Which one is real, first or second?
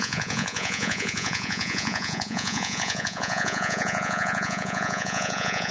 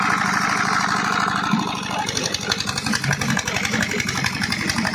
second